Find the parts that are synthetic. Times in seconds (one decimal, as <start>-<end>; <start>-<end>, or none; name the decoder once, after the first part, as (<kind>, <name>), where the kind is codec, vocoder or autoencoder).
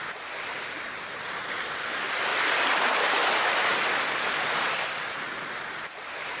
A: none